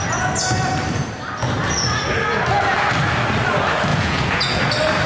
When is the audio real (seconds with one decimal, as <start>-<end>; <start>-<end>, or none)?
0.0-3.9; 4.6-5.1